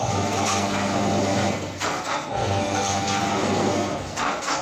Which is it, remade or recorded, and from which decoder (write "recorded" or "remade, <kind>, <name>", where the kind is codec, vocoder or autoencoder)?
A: remade, codec, SNAC